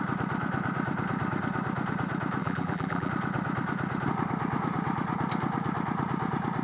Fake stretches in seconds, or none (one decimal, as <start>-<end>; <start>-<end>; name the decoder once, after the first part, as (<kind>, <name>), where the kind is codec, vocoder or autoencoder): 2.4-3.1 (vocoder, BigVGAN v2)